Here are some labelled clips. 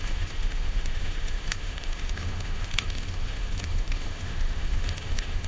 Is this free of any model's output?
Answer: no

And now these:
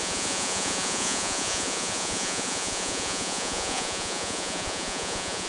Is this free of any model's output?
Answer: no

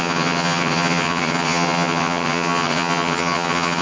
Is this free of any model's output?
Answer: no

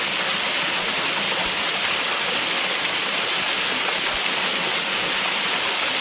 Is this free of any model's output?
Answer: yes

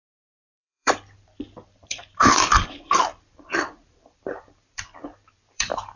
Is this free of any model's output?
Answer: no